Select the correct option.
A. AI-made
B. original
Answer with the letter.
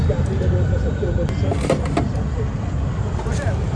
B